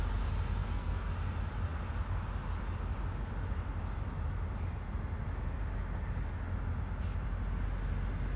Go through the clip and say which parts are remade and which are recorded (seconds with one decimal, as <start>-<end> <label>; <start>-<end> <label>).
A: 0.0-0.6 recorded; 0.6-1.1 remade; 1.1-8.4 recorded